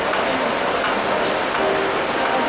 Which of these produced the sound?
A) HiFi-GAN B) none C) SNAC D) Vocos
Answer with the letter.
B